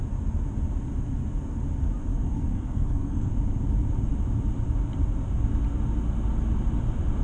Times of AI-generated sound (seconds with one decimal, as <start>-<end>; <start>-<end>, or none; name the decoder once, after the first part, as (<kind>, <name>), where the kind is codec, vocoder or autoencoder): 2.1-3.3 (codec, SNAC)